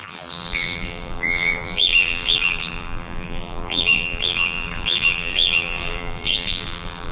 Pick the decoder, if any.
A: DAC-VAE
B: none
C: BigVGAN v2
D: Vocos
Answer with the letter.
C